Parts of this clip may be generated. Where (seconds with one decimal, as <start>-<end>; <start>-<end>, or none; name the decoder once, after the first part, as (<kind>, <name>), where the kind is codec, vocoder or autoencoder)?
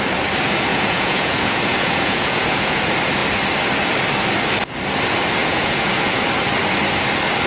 0.7-2.8 (vocoder, Vocos); 5.4-6.2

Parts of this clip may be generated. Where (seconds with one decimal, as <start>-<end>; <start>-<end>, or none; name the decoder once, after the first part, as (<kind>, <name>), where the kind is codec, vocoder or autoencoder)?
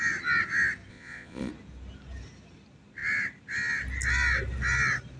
0.9-1.5 (vocoder, Vocos)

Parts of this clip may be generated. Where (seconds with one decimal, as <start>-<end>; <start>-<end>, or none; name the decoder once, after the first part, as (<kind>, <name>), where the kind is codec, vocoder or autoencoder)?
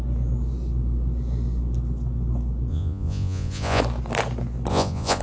2.7-3.8 (vocoder, Vocos); 4.7-5.2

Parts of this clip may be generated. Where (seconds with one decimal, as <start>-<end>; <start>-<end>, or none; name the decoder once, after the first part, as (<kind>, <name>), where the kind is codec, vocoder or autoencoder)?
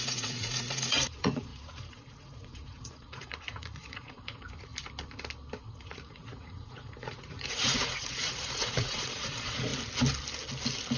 0.0-4.7 (vocoder, Vocos); 5.7-9.7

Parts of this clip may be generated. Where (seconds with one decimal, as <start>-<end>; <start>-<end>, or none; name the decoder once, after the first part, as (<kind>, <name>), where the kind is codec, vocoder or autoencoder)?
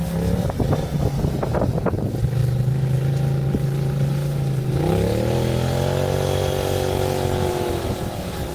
none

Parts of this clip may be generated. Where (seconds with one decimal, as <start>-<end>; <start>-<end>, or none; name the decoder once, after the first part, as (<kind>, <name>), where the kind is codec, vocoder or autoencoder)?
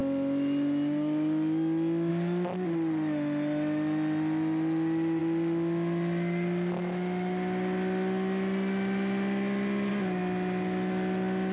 none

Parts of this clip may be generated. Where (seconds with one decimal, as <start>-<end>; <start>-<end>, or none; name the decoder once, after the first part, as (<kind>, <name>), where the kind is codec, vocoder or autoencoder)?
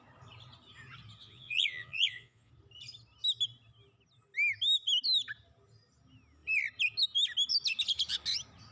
1.2-2.5 (vocoder, Vocos)